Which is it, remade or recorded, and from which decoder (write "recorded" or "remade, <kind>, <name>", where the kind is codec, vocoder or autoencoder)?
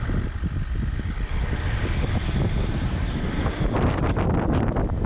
recorded